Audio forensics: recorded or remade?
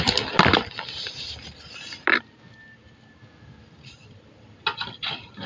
recorded